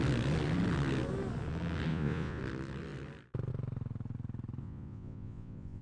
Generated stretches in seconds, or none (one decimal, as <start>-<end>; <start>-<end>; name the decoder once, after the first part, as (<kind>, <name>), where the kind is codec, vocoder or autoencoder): 1.9-2.4 (vocoder, Vocos); 4.6-5.8